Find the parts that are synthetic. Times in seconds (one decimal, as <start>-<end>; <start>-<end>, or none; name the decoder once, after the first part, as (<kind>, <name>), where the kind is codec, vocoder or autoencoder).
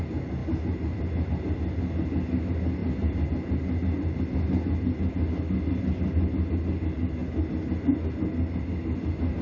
none